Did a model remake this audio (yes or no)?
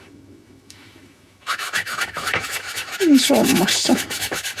yes